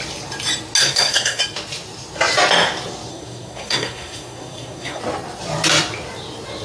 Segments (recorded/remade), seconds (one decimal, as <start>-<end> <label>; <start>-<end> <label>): 0.0-0.8 recorded; 0.8-1.4 remade; 1.4-3.1 recorded; 3.1-5.0 remade; 5.0-6.6 recorded